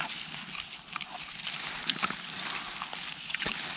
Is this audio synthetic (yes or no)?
no